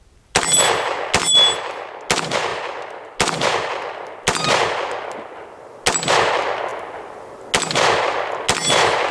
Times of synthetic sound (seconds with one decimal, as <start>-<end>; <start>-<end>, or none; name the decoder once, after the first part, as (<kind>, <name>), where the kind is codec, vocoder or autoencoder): none